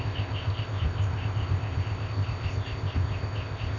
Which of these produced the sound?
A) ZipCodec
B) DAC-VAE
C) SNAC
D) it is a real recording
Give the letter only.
A